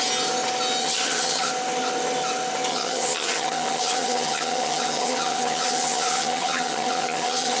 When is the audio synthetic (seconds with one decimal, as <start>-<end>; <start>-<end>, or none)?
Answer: 0.8-1.5; 2.7-7.6